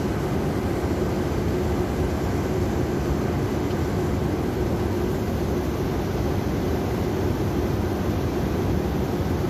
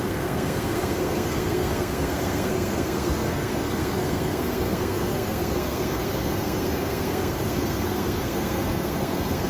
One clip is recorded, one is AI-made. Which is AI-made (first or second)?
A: second